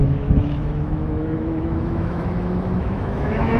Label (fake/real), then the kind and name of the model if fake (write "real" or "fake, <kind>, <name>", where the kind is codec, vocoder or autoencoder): fake, autoencoder, DAC-VAE